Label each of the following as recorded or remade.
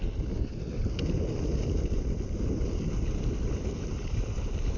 remade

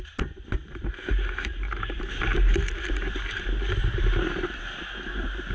remade